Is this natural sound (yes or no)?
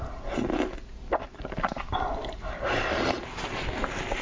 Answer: yes